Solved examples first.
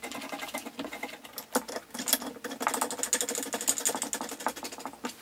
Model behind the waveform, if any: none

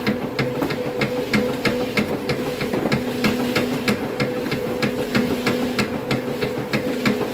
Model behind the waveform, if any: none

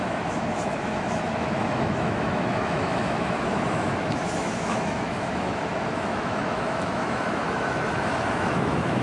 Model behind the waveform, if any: autoencoder, DAC-VAE